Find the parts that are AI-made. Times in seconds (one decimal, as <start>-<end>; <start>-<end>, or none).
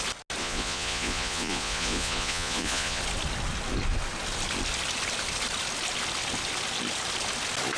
0.4-3.0